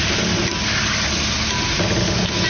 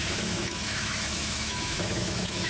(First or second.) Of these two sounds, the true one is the first